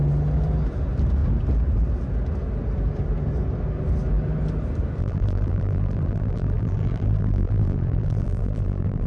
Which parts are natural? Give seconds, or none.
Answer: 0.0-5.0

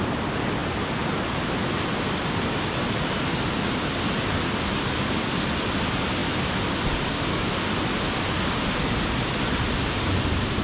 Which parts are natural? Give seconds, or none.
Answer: 0.0-10.6

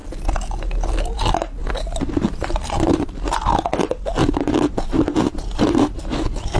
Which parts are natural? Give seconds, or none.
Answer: 0.0-1.6; 3.4-4.2; 6.0-6.6

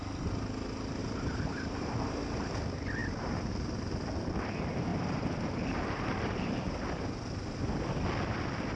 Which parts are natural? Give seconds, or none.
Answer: 0.0-1.0; 2.2-3.0; 3.8-4.9; 5.8-8.8

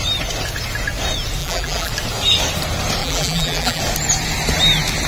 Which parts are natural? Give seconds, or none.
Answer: 0.0-1.4; 1.9-3.0; 3.8-5.1